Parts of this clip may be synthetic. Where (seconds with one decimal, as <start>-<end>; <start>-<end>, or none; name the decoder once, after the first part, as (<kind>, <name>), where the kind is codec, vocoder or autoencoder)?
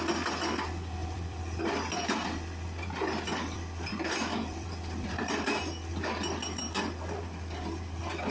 1.0-5.6 (vocoder, BigVGAN v2)